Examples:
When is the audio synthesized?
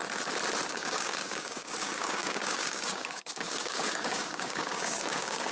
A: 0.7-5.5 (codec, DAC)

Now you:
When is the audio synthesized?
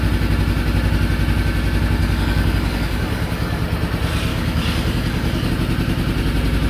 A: 2.0-3.6 (codec, DAC); 4.3-5.5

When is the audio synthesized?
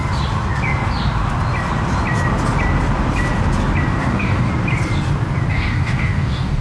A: 4.0-4.5 (codec, DAC); 5.5-6.6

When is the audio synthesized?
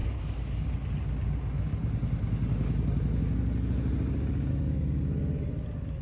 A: 0.0-0.7 (codec, DAC)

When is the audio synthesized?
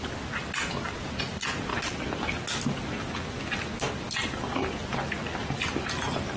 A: none